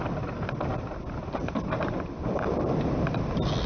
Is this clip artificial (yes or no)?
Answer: no